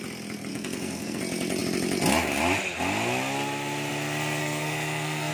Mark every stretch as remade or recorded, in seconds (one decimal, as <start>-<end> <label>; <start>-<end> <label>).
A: 0.0-0.5 recorded; 0.5-1.2 remade; 1.2-4.4 recorded; 4.4-5.3 remade